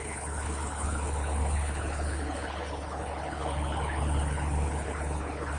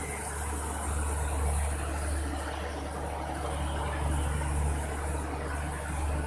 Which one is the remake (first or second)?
first